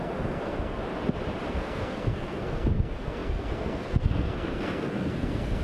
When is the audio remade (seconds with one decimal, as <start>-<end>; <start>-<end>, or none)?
0.0-0.8; 1.5-5.6